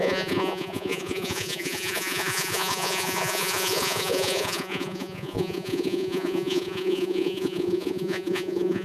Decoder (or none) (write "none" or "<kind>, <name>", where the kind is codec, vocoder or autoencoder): vocoder, Vocos